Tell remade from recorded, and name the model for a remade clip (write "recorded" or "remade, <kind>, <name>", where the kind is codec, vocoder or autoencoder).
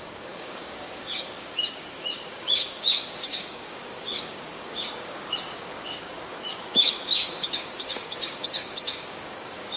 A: remade, codec, DAC